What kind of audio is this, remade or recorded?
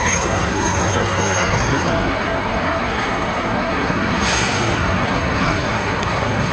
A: remade